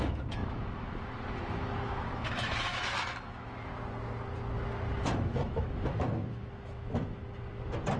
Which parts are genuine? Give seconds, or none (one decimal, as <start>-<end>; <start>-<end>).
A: 3.7-5.0; 7.2-8.0